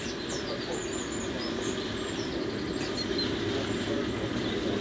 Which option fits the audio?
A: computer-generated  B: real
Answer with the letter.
B